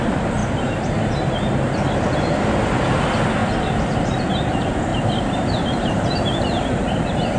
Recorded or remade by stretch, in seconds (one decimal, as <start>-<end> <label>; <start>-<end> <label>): 0.0-4.9 recorded; 4.9-6.4 remade; 6.4-7.4 recorded